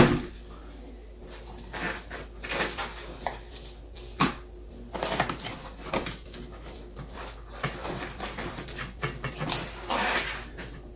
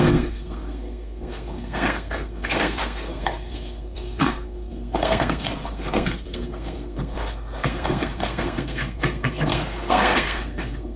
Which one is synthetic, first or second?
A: second